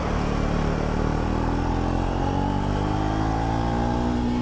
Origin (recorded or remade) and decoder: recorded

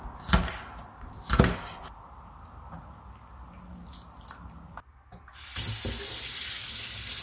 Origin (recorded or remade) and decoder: recorded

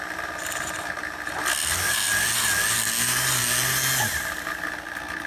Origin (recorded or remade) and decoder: recorded